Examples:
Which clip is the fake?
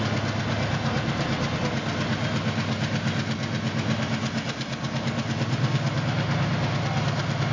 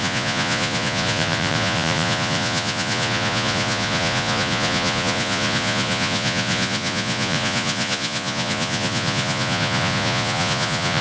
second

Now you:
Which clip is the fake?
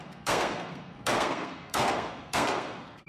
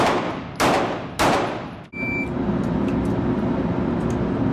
first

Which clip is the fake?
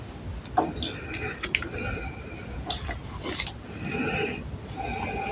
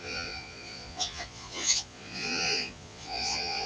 second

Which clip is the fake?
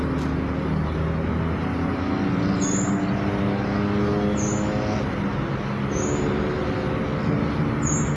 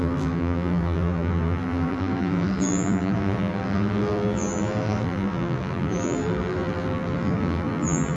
second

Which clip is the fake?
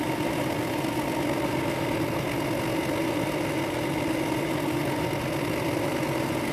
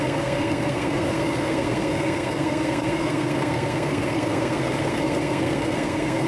second